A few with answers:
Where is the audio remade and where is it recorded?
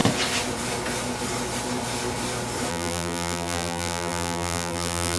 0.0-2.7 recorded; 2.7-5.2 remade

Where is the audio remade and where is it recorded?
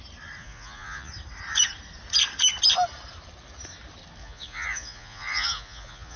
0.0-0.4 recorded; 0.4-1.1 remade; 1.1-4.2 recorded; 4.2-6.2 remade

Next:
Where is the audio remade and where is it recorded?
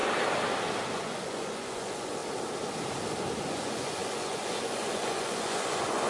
0.0-0.9 recorded; 0.9-2.2 remade; 2.2-3.4 recorded; 3.4-6.1 remade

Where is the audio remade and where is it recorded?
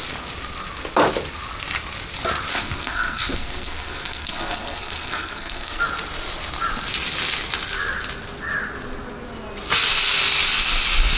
0.0-2.5 recorded; 2.5-5.8 remade; 5.8-11.2 recorded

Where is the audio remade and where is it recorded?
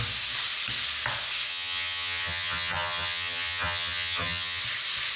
0.0-1.5 recorded; 1.5-4.6 remade; 4.6-5.2 recorded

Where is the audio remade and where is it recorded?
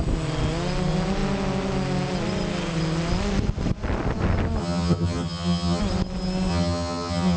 0.0-4.6 recorded; 4.6-5.8 remade; 5.8-6.5 recorded; 6.5-7.4 remade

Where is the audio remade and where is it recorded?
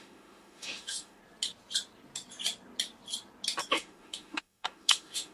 0.0-1.2 remade; 1.2-3.7 recorded; 3.7-5.3 remade